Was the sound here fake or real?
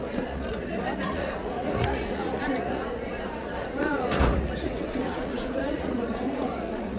fake